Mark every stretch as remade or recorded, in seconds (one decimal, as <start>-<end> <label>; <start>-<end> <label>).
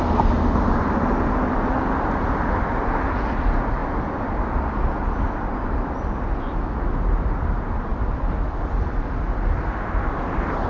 0.0-10.7 recorded